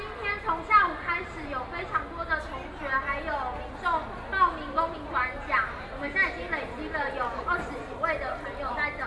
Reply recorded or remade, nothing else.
recorded